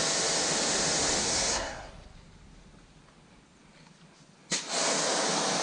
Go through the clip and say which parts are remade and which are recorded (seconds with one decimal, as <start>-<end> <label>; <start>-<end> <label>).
0.0-1.2 recorded; 1.2-1.9 remade; 1.9-5.6 recorded